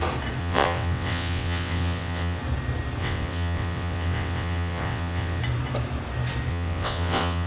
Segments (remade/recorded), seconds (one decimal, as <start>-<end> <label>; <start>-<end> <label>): 0.0-0.4 recorded; 0.4-2.4 remade; 2.4-3.0 recorded; 3.0-5.4 remade; 5.4-6.5 recorded; 6.5-7.5 remade